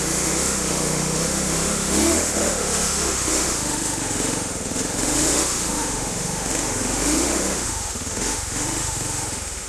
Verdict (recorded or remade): remade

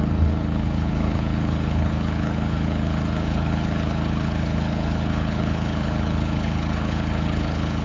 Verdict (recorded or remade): remade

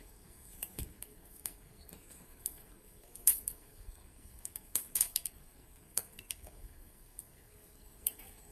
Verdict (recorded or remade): remade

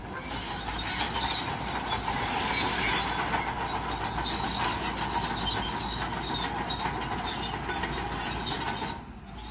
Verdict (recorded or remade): recorded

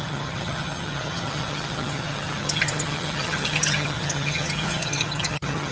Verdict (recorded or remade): remade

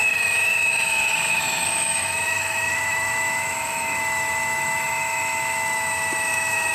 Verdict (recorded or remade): remade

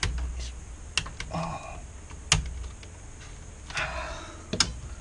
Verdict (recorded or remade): recorded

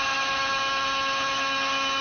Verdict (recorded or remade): remade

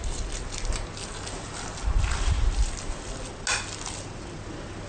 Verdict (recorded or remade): recorded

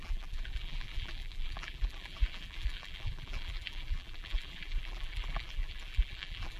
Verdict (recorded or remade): remade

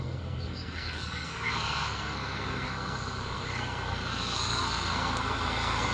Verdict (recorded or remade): remade